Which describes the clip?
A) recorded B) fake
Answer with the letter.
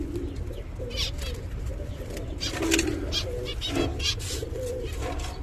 A